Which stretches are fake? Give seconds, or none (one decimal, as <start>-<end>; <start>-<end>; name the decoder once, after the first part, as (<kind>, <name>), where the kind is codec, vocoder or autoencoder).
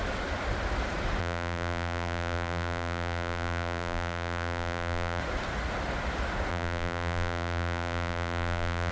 1.2-5.2 (vocoder, BigVGAN v2); 6.5-8.9